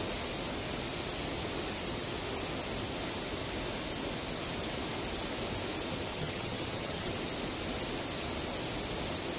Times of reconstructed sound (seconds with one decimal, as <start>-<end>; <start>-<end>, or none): 6.1-7.1